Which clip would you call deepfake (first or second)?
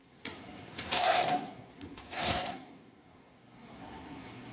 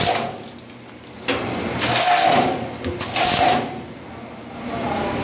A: first